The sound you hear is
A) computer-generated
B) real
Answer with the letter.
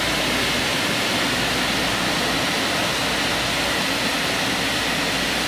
B